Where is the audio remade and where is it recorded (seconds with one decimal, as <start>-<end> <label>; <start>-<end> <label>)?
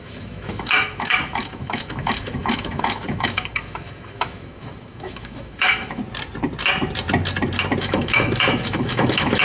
0.0-6.0 remade; 6.0-7.8 recorded; 7.8-9.4 remade